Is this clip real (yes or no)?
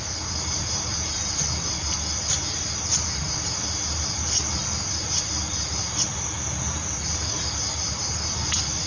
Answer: yes